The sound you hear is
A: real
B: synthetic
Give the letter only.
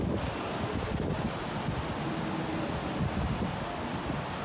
A